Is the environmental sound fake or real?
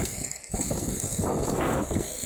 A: fake